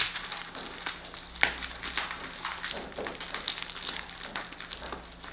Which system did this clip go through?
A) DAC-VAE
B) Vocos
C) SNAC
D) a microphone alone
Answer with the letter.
D